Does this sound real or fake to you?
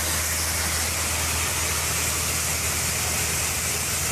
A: real